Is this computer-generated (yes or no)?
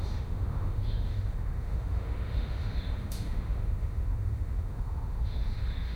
yes